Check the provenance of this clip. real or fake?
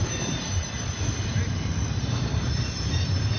real